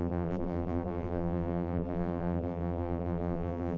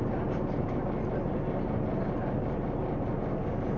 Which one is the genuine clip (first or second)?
second